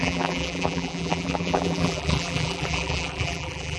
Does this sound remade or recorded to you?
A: remade